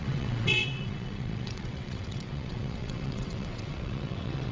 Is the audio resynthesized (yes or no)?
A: yes